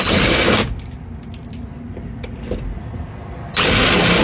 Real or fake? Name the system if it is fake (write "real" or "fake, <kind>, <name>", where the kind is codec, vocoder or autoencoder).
real